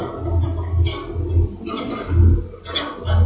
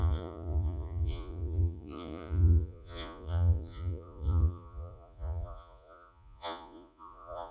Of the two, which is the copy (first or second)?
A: second